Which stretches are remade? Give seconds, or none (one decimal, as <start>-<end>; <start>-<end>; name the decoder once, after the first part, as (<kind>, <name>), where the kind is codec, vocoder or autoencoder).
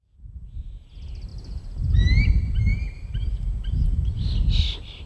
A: none